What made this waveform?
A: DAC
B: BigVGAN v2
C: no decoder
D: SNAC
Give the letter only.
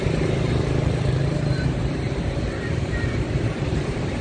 B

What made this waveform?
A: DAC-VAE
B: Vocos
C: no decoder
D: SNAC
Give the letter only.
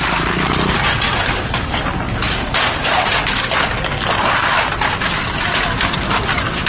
C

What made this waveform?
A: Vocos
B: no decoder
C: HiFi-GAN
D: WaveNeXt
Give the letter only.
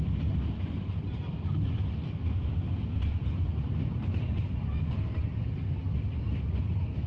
B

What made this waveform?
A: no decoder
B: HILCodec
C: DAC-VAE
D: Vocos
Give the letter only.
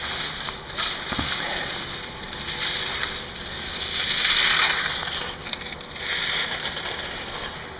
A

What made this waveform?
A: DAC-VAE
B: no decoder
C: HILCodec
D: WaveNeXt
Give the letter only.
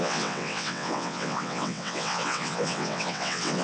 D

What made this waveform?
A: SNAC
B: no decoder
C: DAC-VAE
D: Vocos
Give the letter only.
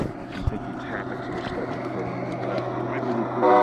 B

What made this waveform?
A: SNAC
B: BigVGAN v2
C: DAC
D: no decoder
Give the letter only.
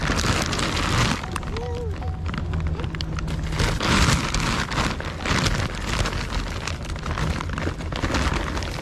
D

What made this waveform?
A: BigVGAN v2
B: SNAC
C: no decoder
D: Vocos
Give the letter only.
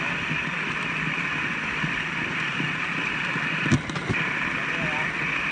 C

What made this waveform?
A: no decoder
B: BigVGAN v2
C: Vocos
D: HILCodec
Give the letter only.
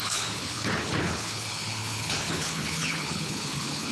D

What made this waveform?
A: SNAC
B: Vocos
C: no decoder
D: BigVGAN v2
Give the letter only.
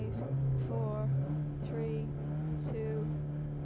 C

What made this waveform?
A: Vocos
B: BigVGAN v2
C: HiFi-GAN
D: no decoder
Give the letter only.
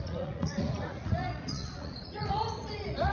A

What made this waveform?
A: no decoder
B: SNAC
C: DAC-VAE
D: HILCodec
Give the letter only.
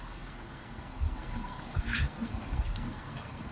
B